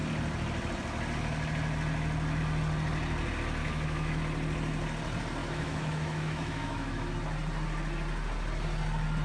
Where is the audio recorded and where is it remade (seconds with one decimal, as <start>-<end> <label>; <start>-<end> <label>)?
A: 0.0-3.6 recorded; 3.6-4.2 remade; 4.2-5.4 recorded; 5.4-7.1 remade; 7.1-9.2 recorded